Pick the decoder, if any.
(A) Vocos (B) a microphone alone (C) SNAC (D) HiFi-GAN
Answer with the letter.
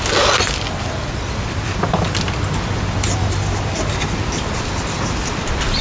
B